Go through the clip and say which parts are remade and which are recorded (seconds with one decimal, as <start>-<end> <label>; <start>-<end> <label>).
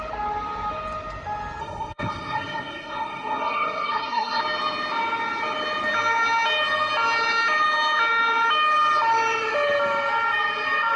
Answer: 0.0-1.6 recorded; 1.6-4.4 remade; 4.4-11.0 recorded